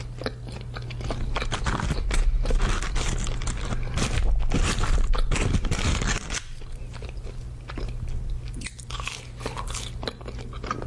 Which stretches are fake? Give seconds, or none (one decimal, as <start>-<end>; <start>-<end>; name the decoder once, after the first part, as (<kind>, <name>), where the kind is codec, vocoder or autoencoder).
none